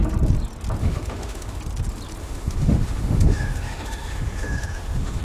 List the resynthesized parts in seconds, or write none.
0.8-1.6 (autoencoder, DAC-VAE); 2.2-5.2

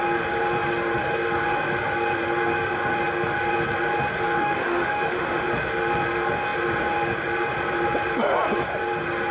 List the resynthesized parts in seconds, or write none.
4.4-5.5 (autoencoder, DAC-VAE)

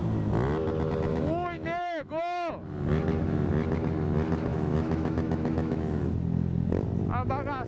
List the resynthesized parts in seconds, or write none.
1.1-2.5 (autoencoder, DAC-VAE); 4.5-6.0

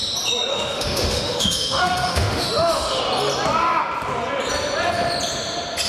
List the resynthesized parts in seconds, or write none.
0.5-3.0 (autoencoder, DAC-VAE)